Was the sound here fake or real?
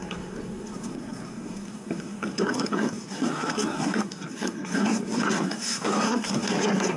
fake